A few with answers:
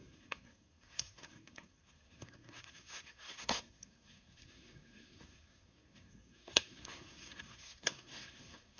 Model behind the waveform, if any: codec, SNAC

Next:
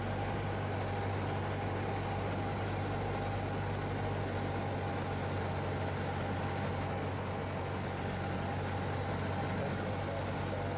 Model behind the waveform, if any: none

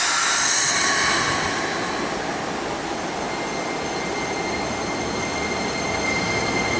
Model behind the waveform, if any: none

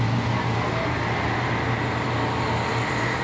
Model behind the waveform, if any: none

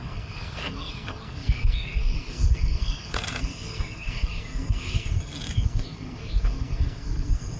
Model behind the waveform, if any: codec, SNAC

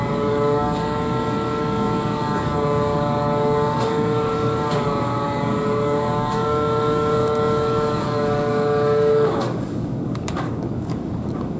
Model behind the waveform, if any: codec, DAC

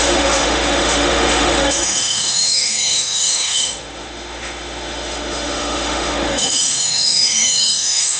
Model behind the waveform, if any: autoencoder, DAC-VAE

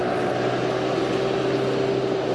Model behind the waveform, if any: none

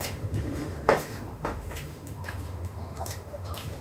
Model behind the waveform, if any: autoencoder, DAC-VAE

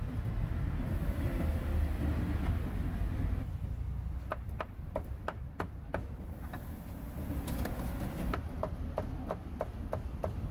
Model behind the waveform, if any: none